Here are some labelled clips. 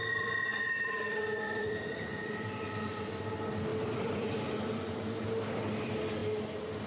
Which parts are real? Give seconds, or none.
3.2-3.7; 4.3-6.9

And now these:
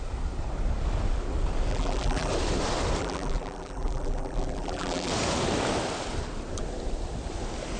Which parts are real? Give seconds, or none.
0.0-1.7; 2.3-3.0; 5.1-7.8

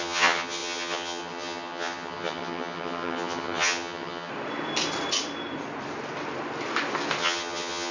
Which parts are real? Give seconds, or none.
4.3-7.2

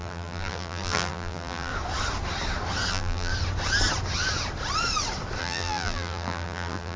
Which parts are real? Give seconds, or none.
1.7-2.9; 3.3-5.4

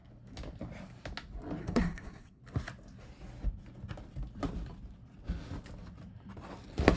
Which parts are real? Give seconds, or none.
0.0-1.6; 2.4-7.0